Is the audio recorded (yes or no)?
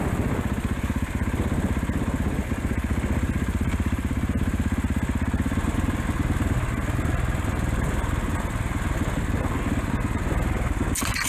yes